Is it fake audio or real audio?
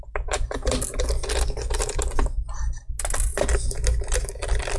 real